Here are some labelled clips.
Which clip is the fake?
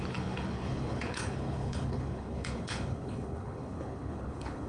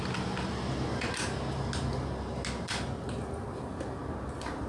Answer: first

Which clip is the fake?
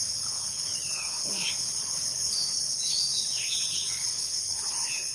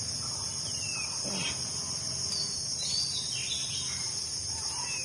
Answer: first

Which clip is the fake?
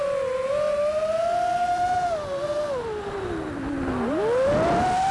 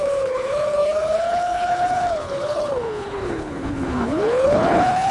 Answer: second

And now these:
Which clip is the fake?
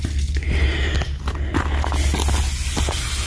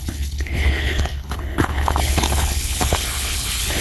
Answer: second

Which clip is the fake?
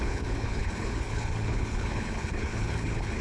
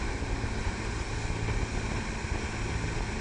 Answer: first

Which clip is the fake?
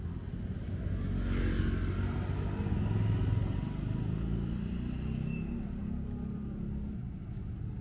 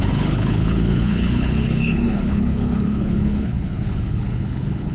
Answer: second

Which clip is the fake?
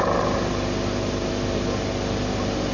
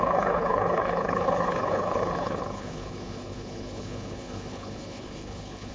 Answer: second